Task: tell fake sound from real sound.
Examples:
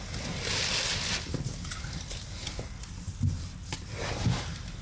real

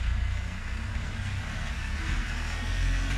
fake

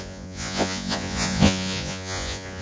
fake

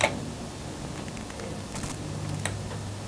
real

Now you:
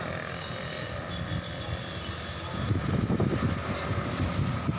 real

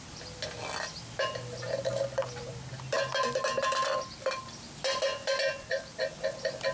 real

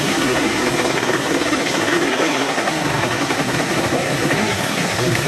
fake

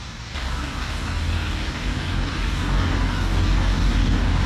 fake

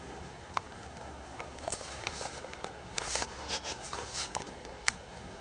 fake